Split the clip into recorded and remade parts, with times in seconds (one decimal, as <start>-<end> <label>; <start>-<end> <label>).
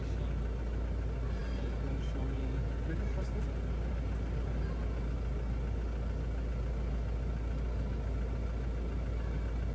0.0-9.7 recorded